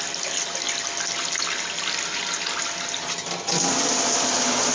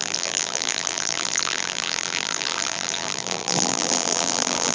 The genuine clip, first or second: first